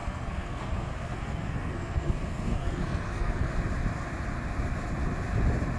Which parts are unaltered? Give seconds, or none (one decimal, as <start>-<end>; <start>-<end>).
3.5-5.8